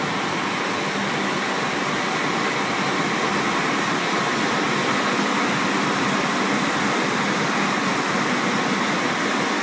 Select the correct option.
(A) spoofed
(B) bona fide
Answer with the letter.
B